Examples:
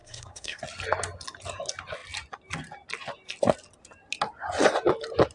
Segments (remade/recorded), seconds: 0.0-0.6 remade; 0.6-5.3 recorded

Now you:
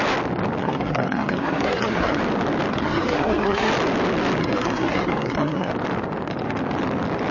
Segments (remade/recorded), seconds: 0.0-0.6 recorded; 0.6-2.2 remade; 2.2-2.7 recorded; 2.7-3.7 remade; 3.7-4.4 recorded; 4.4-5.7 remade; 5.7-7.3 recorded

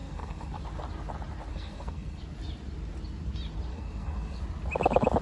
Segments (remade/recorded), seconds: 0.0-0.6 remade; 0.6-1.5 recorded; 1.5-2.2 remade; 2.2-3.7 recorded; 3.7-4.4 remade; 4.4-5.2 recorded

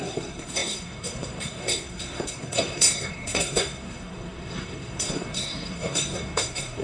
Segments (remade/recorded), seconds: 0.0-6.8 remade

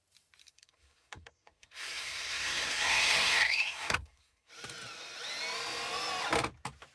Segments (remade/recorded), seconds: 0.0-0.4 recorded; 0.4-4.5 remade; 4.5-6.9 recorded

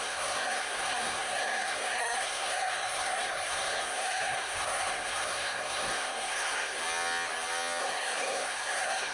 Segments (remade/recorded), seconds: 0.0-6.8 remade; 6.8-7.8 recorded; 7.8-9.1 remade